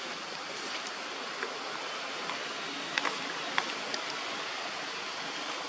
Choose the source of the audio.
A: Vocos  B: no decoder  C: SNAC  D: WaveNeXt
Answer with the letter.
B